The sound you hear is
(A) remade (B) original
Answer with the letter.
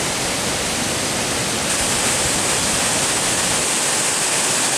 B